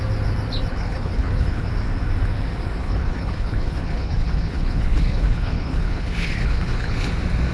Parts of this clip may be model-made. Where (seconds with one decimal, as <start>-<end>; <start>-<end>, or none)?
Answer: 0.7-1.7; 2.8-7.1